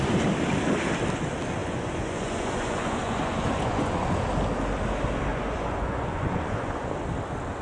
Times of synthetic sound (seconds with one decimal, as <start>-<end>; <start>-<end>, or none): 1.6-4.1; 5.3-6.9